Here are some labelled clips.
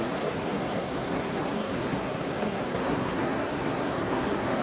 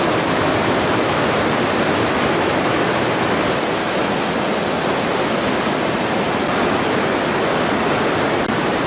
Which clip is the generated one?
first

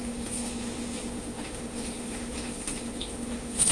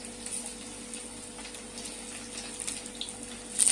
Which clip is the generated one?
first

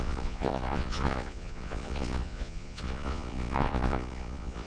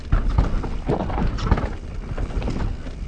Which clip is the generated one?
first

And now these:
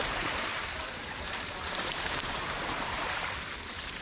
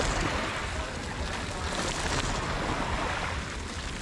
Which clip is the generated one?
first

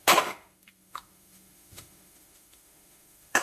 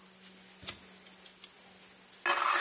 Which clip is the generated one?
first